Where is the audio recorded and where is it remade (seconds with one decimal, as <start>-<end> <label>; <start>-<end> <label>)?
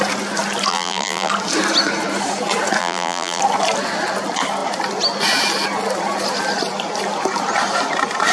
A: 0.0-0.7 recorded; 0.7-1.3 remade; 1.3-2.8 recorded; 2.8-3.4 remade; 3.4-8.3 recorded